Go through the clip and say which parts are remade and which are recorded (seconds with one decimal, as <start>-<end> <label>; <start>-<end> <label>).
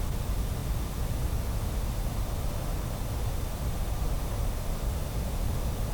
0.0-5.9 recorded